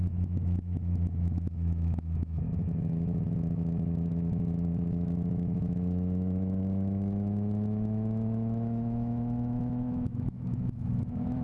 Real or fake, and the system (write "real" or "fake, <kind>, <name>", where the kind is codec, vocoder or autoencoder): fake, autoencoder, DAC-VAE